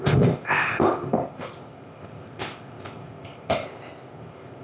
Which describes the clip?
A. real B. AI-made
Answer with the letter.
B